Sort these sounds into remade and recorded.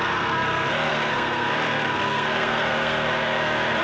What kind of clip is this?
remade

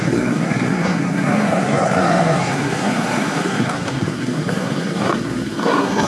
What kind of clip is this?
remade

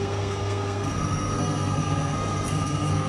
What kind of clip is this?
remade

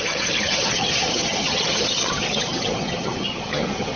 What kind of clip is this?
remade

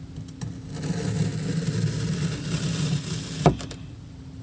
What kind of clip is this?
recorded